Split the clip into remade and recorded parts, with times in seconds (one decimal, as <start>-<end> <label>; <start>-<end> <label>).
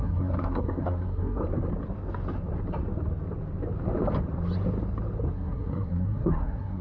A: 0.0-1.4 remade; 1.4-5.3 recorded; 5.3-6.8 remade